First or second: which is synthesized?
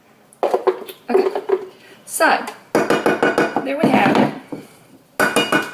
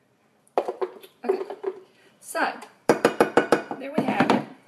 second